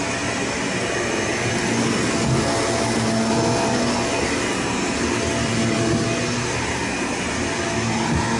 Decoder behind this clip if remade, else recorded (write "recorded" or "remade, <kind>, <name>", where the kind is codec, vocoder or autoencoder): recorded